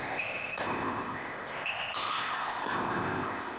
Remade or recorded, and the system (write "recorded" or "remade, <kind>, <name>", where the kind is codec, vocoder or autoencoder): remade, codec, ZipCodec